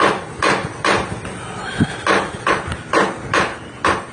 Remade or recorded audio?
recorded